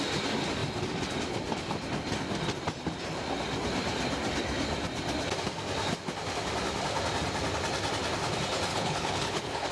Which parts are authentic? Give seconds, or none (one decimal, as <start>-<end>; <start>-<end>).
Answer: 0.0-8.7